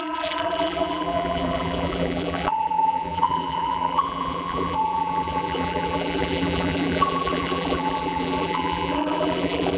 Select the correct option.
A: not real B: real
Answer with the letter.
A